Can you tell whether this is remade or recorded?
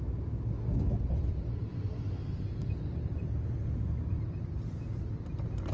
recorded